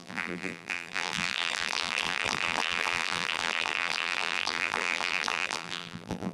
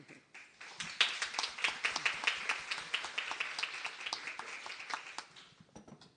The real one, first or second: second